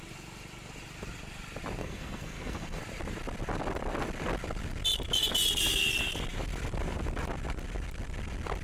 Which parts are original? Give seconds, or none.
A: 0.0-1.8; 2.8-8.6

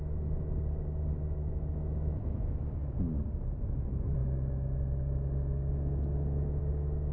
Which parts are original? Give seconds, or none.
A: 0.0-1.4; 2.5-4.2; 6.6-7.1